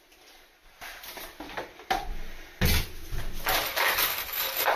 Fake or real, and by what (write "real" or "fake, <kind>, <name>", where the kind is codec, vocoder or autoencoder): real